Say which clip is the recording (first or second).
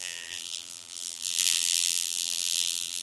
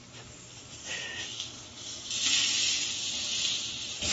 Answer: second